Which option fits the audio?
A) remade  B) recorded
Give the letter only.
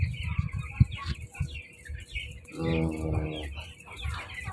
B